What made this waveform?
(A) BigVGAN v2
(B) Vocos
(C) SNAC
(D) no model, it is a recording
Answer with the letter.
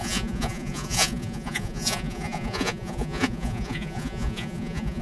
B